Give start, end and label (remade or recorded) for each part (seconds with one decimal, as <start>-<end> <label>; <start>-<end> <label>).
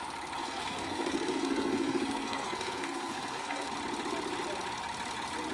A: 0.0-0.4 recorded; 0.4-3.7 remade; 3.7-5.5 recorded